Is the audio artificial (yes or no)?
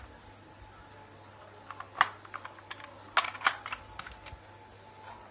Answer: no